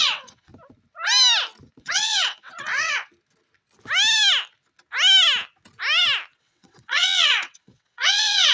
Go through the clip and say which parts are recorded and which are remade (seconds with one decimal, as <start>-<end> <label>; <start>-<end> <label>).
0.0-0.5 remade; 0.5-1.8 recorded; 1.8-3.1 remade; 3.1-6.4 recorded; 6.4-8.5 remade